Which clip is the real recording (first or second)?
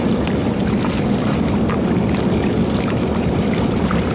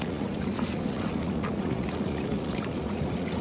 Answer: first